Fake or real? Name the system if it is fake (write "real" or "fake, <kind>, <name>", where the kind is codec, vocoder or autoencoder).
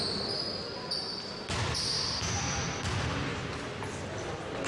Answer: real